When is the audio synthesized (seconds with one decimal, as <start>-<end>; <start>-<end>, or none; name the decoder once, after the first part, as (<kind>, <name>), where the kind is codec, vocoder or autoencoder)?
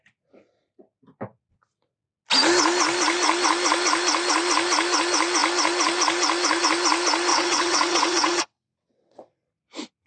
7.3-9.3 (vocoder, WaveNeXt)